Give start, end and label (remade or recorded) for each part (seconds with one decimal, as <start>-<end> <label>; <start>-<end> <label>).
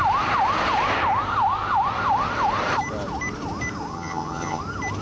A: 0.0-3.9 recorded; 3.9-4.6 remade; 4.6-5.0 recorded